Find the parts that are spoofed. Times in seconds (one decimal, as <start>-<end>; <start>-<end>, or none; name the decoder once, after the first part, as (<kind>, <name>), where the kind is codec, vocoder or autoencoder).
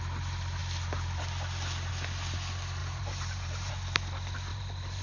2.8-3.7 (vocoder, BigVGAN v2); 4.5-5.0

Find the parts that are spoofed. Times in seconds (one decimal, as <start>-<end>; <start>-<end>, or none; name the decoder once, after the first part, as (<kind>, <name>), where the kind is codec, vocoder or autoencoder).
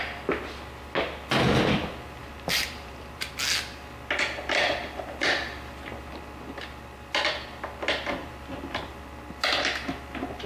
2.2-3.3 (vocoder, BigVGAN v2); 8.2-8.8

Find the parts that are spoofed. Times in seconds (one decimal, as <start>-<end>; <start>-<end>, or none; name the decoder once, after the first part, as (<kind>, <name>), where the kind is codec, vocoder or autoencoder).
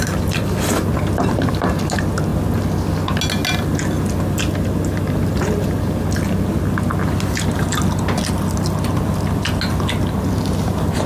none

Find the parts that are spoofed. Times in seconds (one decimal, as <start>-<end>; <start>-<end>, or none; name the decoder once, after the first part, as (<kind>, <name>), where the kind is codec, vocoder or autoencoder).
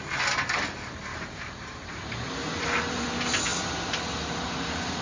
1.1-3.1 (vocoder, BigVGAN v2); 3.5-5.0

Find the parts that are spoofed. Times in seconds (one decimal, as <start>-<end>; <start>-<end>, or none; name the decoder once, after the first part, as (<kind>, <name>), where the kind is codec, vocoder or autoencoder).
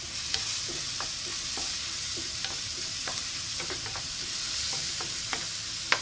1.3-4.9 (vocoder, BigVGAN v2)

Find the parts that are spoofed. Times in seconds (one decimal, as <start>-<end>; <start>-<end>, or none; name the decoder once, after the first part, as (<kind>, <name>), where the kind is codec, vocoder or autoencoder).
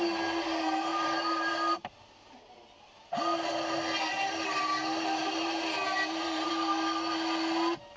0.9-1.5 (vocoder, BigVGAN v2); 4.1-4.6; 5.2-6.5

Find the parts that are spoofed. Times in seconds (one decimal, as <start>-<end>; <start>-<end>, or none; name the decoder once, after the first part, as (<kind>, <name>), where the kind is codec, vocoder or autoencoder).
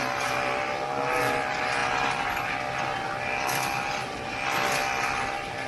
none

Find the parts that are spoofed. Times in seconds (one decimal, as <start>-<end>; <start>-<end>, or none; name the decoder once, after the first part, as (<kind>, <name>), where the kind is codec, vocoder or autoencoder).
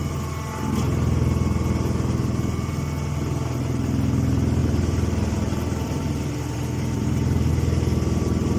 4.6-7.5 (vocoder, BigVGAN v2)